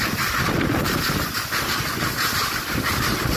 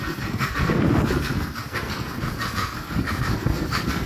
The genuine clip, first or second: first